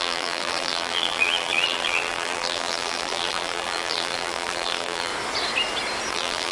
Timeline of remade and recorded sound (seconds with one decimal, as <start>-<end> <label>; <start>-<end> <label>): 0.0-5.1 remade; 5.1-6.1 recorded; 6.1-6.5 remade